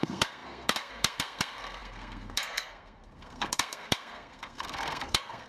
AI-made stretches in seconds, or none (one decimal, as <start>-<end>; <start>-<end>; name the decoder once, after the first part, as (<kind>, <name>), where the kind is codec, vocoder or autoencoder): 0.0-5.5 (codec, SNAC)